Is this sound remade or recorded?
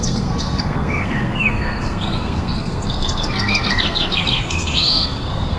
remade